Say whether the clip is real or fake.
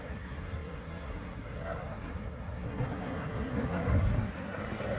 fake